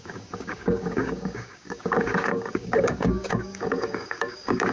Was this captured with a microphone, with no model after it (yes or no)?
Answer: no